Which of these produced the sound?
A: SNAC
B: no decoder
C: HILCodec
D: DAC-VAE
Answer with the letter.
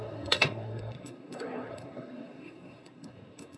A